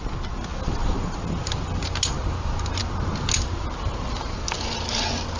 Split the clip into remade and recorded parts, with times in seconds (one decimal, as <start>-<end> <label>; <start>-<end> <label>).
0.0-5.4 recorded